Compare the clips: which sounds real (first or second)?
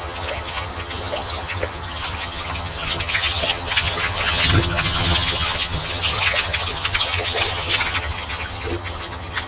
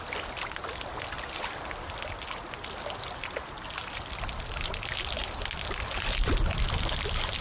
second